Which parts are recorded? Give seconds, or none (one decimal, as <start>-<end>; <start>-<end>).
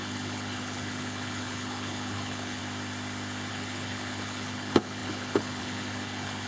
2.6-3.5